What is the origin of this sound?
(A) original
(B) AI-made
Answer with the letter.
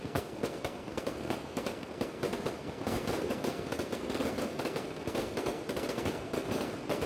B